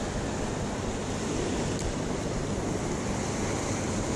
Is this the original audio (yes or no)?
yes